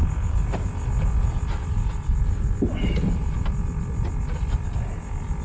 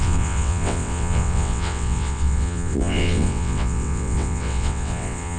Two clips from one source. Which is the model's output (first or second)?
second